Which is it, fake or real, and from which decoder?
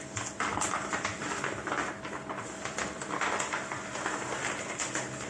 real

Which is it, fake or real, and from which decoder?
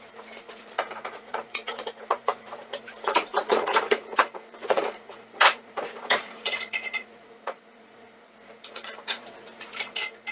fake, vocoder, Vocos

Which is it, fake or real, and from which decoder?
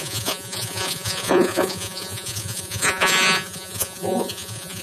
fake, vocoder, Vocos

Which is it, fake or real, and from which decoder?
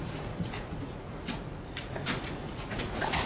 fake, vocoder, Vocos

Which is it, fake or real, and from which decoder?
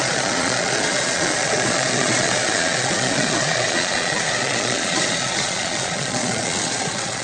fake, vocoder, Vocos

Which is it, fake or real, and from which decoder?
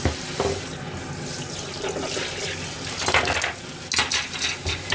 real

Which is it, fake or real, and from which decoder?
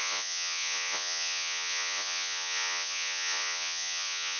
fake, vocoder, Vocos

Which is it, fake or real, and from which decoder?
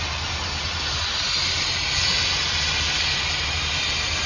real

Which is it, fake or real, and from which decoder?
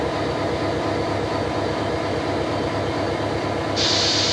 real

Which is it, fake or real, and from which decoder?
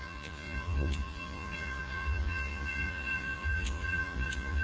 fake, vocoder, Vocos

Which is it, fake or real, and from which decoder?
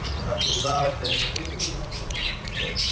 fake, vocoder, Vocos